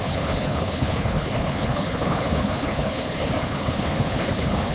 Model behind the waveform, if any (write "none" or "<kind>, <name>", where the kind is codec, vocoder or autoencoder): codec, HILCodec